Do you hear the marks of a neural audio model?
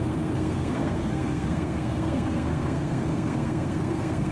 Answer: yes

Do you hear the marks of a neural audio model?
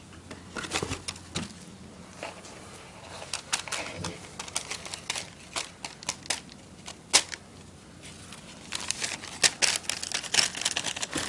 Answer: no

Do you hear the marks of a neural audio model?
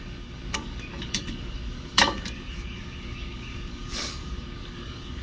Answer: yes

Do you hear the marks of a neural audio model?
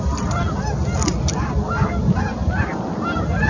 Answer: no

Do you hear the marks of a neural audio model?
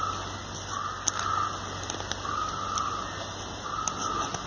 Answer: no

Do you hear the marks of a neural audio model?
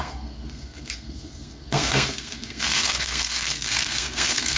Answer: yes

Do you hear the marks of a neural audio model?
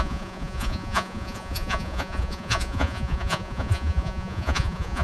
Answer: yes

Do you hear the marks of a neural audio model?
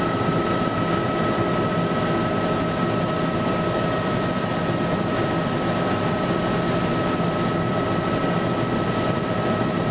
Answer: no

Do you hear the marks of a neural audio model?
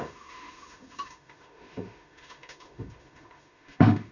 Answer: yes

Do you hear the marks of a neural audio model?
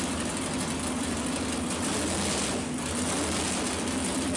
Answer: no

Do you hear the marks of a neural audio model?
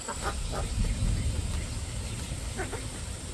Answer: no